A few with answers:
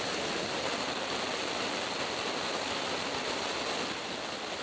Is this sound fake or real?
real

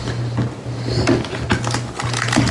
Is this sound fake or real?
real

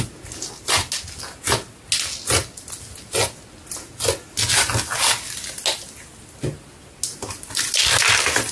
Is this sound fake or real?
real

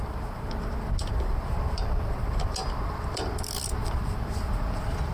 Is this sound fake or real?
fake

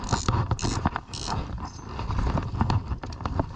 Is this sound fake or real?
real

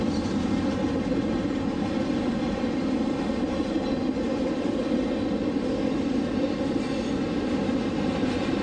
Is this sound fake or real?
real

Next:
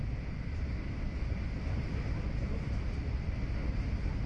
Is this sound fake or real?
real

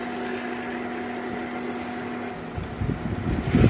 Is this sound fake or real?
real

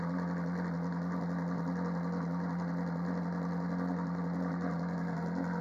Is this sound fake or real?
real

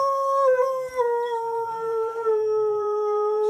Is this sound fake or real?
fake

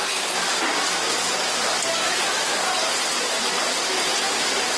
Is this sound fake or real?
fake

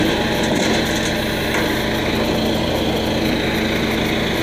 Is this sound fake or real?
real